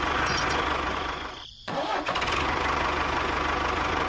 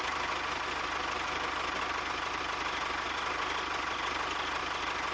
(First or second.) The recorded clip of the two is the second